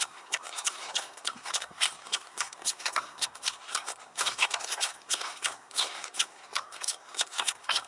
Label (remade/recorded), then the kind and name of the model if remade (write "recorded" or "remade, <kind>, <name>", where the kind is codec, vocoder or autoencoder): remade, codec, SNAC